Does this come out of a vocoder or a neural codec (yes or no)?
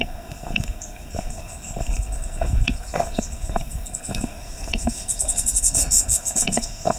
yes